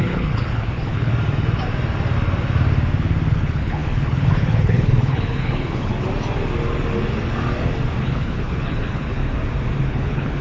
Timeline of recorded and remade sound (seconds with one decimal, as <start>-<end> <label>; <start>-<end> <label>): 0.0-1.1 remade; 1.1-3.3 recorded; 3.3-5.9 remade; 5.9-8.0 recorded; 8.0-9.2 remade; 9.2-9.9 recorded; 9.9-10.4 remade